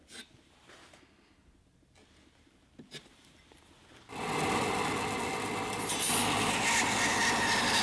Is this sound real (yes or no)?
yes